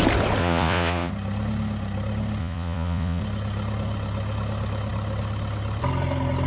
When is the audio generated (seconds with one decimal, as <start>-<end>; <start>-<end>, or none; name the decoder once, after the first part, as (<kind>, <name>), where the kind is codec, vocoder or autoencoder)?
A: 0.4-1.1 (vocoder, Vocos); 2.4-3.2